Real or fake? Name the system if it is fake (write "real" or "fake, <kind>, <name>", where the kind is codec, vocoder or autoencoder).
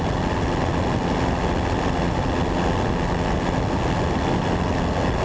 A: real